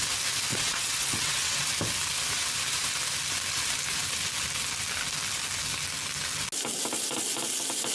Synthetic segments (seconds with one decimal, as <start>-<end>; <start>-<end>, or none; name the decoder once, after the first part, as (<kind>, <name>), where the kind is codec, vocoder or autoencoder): 0.5-1.7 (vocoder, WaveNeXt)

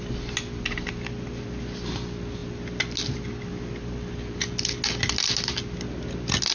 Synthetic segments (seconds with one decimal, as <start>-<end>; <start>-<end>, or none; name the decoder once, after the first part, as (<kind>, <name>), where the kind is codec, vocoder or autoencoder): none

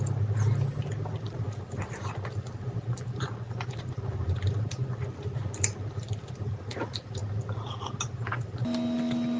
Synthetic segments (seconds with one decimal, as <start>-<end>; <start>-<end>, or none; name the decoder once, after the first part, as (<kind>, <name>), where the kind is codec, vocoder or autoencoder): none

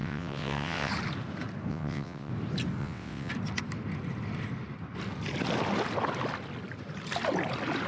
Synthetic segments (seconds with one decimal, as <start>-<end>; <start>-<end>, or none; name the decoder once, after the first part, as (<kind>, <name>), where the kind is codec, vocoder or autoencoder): 0.0-0.9 (vocoder, WaveNeXt); 1.7-2.3; 2.8-3.3

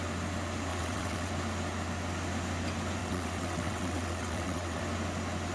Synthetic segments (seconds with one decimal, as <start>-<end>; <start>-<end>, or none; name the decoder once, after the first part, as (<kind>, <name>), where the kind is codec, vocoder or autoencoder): 0.7-1.3 (vocoder, WaveNeXt); 3.0-4.8

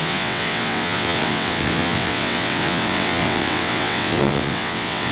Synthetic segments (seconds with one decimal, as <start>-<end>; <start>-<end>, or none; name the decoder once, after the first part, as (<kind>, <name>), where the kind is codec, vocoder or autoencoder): 0.0-5.1 (vocoder, WaveNeXt)

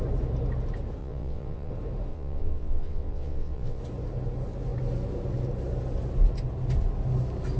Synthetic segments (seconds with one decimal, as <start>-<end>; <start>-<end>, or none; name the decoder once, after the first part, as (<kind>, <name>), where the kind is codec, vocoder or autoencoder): 1.0-1.7 (vocoder, WaveNeXt); 2.1-3.8

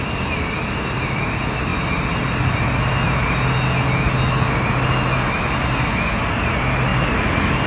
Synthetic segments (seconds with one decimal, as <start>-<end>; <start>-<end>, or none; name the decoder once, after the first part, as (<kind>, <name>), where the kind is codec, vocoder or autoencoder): none